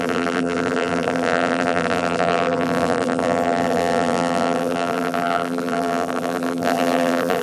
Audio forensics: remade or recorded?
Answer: remade